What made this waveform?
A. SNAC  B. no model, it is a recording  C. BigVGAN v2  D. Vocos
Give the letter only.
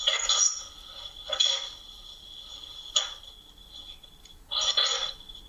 B